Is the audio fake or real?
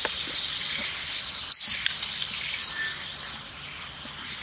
real